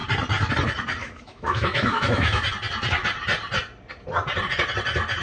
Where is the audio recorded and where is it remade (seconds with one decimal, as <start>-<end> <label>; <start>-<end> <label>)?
0.0-1.0 recorded; 1.0-2.4 remade; 2.4-5.2 recorded